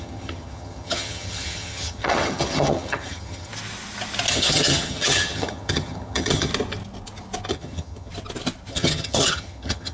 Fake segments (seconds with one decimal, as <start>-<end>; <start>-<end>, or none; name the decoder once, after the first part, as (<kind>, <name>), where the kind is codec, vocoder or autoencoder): 0.0-3.5 (vocoder, HiFi-GAN); 4.3-6.5; 7.5-8.1; 8.7-9.9